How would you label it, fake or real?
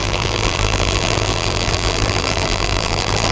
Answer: fake